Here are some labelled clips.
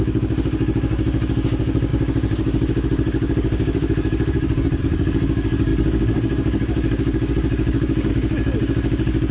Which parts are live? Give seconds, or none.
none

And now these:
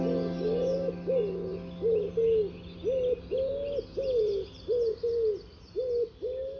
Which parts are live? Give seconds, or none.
0.0-6.6

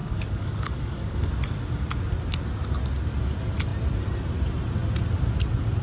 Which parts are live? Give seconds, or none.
1.3-5.8

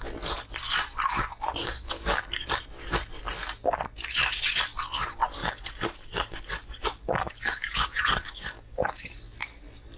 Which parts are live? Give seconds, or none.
0.0-1.6; 2.6-5.4; 9.2-10.0

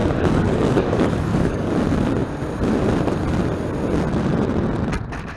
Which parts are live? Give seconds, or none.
1.7-5.4